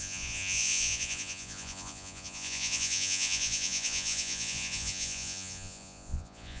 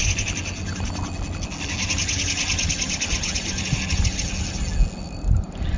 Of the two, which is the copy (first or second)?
first